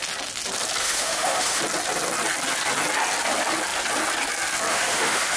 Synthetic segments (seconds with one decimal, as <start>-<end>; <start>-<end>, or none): 0.8-1.6; 4.7-5.4